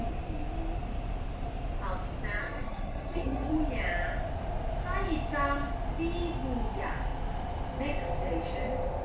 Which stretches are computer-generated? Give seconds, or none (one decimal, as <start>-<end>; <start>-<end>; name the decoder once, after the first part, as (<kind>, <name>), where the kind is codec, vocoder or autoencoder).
2.4-3.5 (codec, SNAC)